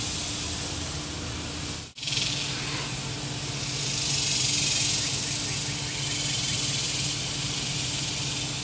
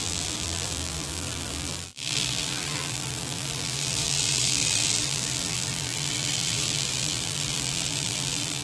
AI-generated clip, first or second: second